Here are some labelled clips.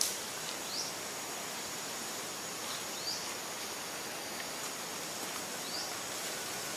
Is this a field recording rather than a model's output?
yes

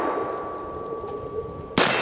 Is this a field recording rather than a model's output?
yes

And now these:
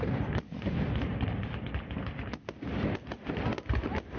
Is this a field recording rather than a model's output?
yes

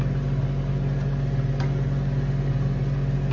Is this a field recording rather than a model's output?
yes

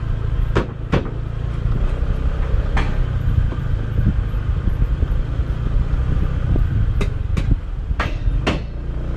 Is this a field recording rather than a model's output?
yes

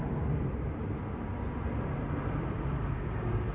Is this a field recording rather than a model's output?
yes